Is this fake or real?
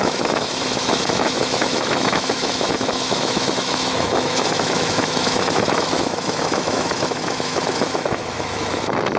fake